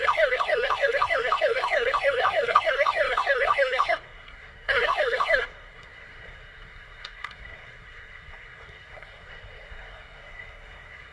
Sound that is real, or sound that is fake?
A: fake